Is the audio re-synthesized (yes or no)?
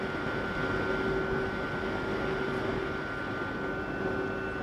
no